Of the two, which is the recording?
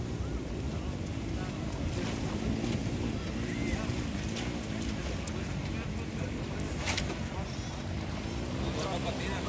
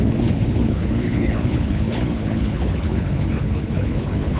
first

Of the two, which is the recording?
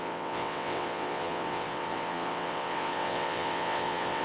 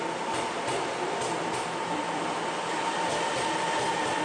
second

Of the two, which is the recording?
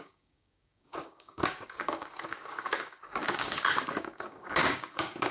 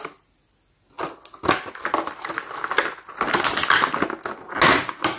second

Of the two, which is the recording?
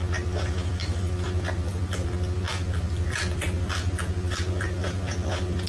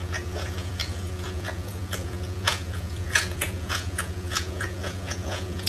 first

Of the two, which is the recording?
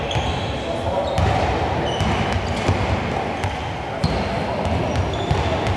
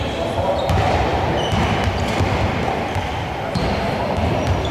first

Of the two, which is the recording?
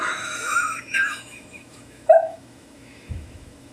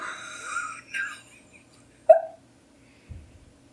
second